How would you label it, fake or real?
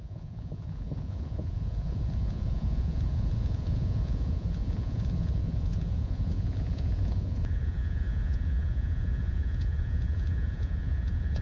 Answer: fake